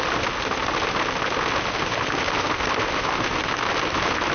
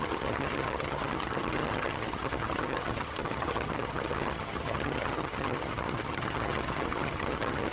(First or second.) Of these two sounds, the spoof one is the second